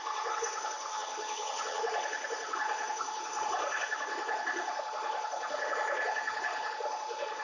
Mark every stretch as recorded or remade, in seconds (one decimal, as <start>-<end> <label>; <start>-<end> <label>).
0.0-0.9 recorded; 0.9-1.8 remade; 1.8-7.4 recorded